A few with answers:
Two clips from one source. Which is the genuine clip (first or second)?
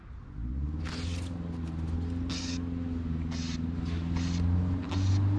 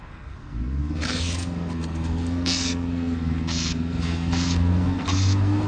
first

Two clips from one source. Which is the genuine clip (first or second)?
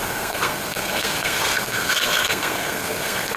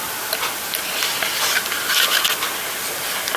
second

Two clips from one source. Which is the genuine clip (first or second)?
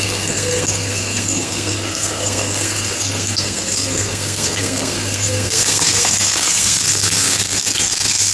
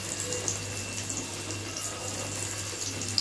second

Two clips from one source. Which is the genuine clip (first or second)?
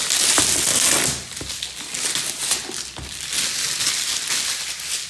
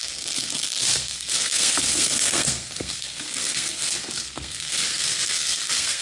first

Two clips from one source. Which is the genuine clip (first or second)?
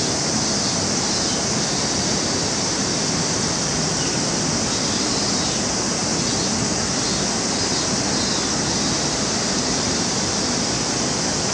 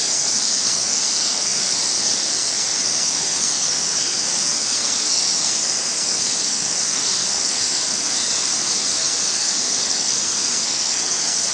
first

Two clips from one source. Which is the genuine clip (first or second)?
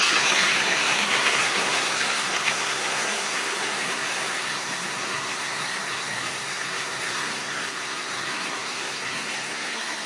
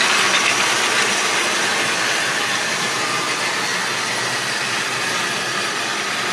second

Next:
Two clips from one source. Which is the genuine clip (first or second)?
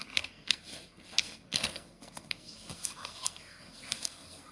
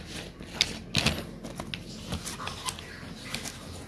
second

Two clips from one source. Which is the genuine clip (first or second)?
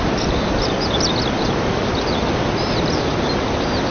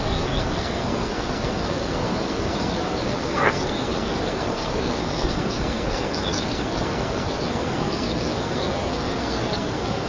first